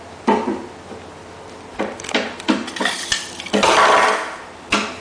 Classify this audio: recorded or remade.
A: recorded